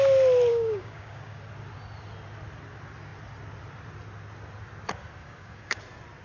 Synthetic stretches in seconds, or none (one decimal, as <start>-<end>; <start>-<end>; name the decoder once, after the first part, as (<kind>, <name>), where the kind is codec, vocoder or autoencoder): 0.5-1.4 (codec, DAC); 5.2-5.8